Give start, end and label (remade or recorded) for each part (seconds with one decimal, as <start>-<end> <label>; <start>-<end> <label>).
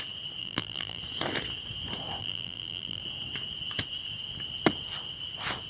0.0-0.4 recorded; 0.4-1.0 remade; 1.0-2.2 recorded; 2.2-3.0 remade; 3.0-5.7 recorded